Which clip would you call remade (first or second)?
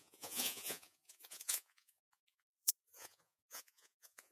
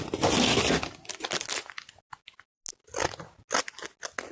first